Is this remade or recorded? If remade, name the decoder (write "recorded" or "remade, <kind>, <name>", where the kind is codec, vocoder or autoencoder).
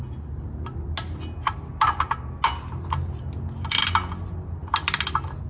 recorded